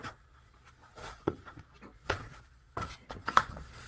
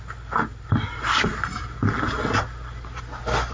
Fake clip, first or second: first